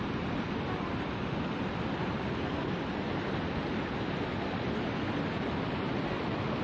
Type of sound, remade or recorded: recorded